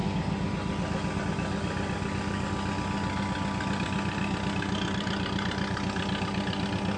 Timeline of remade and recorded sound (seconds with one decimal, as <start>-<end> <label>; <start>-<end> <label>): 0.0-7.0 recorded